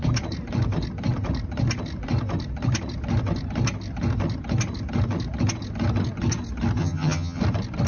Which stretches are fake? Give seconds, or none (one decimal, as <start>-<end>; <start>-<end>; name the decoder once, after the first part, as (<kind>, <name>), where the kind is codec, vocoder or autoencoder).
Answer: 6.8-7.4 (vocoder, HiFi-GAN)